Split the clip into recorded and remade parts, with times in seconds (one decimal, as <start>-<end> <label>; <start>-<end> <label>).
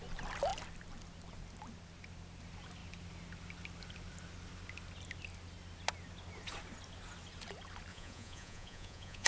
0.0-7.9 recorded; 7.9-9.3 remade